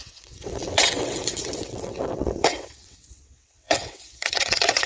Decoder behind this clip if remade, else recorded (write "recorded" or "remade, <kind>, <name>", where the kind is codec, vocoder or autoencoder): remade, vocoder, WaveNeXt